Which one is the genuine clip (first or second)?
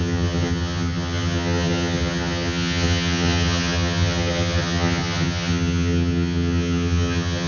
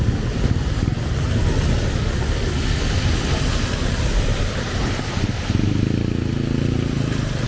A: second